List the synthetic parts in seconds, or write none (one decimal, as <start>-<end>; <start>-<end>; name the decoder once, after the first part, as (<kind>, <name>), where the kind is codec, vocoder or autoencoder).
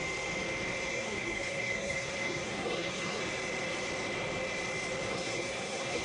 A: 0.9-3.2 (codec, SNAC); 5.1-6.0